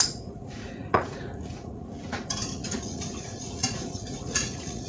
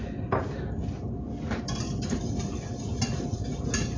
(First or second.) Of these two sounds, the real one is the second